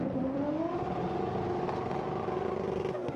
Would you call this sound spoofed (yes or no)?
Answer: no